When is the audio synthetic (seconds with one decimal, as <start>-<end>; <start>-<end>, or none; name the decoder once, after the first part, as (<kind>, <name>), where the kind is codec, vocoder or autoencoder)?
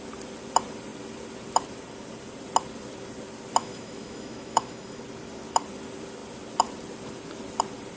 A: 3.6-5.0 (autoencoder, DAC-VAE)